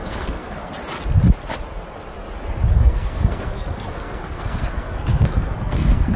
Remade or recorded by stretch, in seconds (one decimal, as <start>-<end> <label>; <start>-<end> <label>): 0.0-0.7 remade; 0.7-2.8 recorded; 2.8-6.2 remade